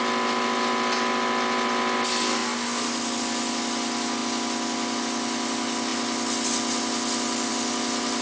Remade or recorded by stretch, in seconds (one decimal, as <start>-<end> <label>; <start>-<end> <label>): 0.0-8.2 recorded